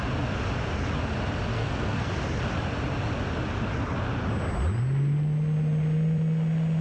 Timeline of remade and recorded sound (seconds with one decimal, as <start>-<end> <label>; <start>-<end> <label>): 0.0-1.5 recorded; 1.5-2.1 remade; 2.1-6.8 recorded